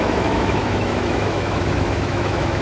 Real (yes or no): no